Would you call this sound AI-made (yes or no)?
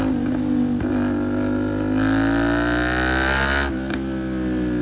no